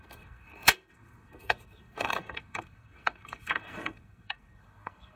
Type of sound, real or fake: fake